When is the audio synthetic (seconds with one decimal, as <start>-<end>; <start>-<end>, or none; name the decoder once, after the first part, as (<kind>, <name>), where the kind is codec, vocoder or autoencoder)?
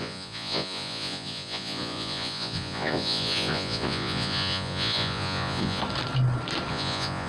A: 0.0-5.8 (vocoder, Vocos); 6.7-7.3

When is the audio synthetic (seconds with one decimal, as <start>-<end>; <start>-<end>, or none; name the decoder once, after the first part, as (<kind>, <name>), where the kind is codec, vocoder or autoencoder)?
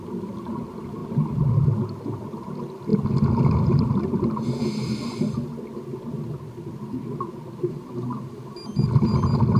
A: none